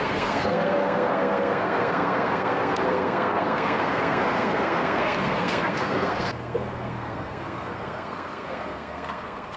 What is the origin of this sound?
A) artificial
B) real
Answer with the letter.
A